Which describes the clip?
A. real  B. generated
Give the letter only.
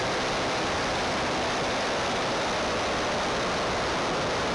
A